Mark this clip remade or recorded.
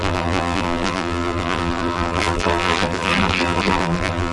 remade